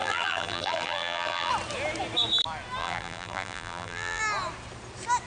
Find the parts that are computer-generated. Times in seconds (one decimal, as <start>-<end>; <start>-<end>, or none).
0.0-1.5; 2.8-4.2